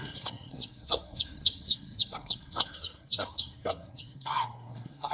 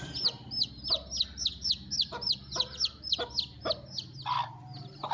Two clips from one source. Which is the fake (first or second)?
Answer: first